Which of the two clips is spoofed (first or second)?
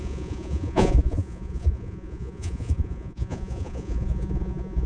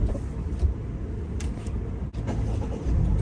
first